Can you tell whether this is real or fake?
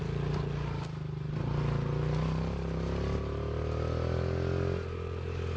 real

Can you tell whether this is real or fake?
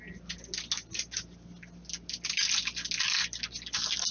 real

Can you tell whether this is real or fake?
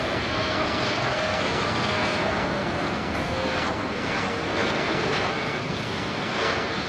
fake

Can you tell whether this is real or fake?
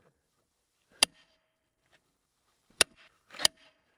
fake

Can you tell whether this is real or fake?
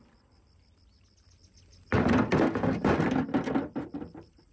real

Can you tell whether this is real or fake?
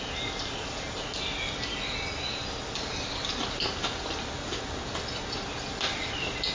real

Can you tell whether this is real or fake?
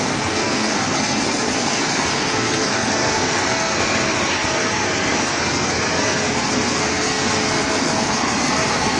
fake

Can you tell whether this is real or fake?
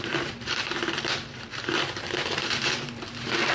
fake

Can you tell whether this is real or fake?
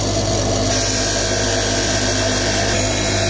real